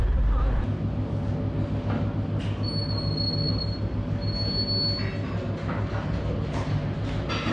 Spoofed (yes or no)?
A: no